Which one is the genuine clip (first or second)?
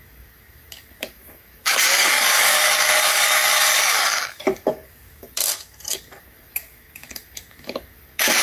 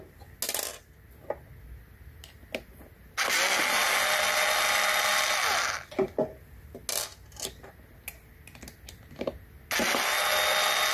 second